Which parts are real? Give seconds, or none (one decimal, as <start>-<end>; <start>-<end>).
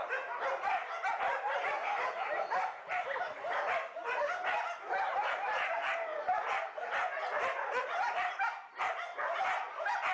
0.0-1.7; 2.5-10.1